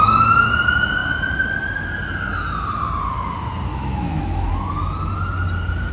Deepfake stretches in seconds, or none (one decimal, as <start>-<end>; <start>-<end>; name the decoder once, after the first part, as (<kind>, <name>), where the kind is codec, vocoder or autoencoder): 3.7-4.5 (autoencoder, DAC-VAE)

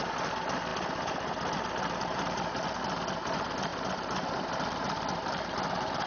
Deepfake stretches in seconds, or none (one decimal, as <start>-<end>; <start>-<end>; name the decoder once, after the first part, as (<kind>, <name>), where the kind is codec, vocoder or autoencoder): none

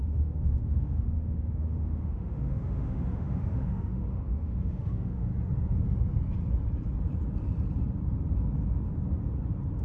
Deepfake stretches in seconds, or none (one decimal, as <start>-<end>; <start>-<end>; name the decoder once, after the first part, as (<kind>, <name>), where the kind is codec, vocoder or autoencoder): 0.0-5.3 (autoencoder, DAC-VAE)

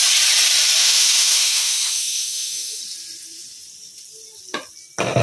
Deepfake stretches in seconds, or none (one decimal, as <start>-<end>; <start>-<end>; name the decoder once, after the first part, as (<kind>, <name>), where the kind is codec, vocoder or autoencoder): 0.8-2.8 (autoencoder, DAC-VAE)

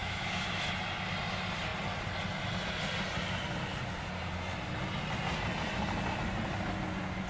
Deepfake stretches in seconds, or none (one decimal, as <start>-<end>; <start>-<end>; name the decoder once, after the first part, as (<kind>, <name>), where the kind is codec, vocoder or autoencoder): 0.0-0.7 (autoencoder, DAC-VAE)

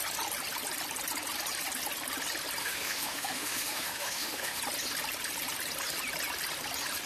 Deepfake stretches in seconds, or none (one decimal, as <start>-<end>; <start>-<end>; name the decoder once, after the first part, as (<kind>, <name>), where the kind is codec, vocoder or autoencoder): 2.6-4.6 (autoencoder, DAC-VAE)